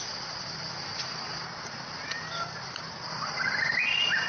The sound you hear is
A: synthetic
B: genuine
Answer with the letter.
B